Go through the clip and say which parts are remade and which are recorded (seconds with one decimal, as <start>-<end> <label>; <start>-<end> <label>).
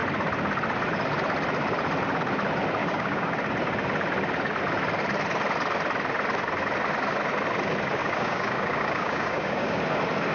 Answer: 0.0-2.8 recorded; 2.8-3.3 remade; 3.3-8.0 recorded; 8.0-9.8 remade; 9.8-10.3 recorded